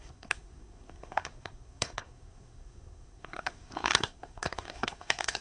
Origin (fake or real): fake